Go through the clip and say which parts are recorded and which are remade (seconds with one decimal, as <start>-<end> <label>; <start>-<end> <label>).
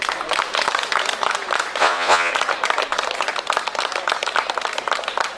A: 0.0-1.8 recorded; 1.8-2.3 remade; 2.3-5.4 recorded